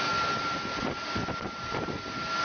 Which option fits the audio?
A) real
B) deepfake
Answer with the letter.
A